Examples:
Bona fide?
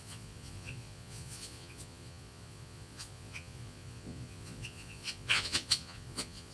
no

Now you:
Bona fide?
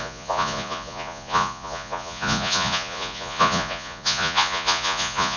no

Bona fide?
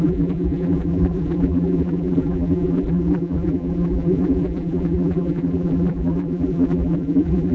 no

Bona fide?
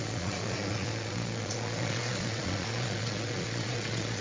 no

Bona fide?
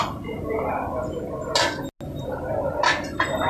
yes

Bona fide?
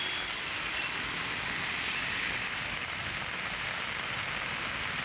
yes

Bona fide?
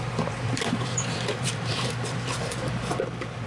no